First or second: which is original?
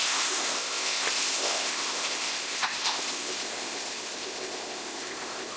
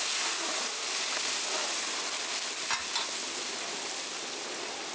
second